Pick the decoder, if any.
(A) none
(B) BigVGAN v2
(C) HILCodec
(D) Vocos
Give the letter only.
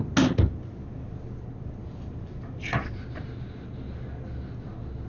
A